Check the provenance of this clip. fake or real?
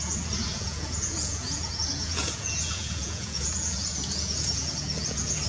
fake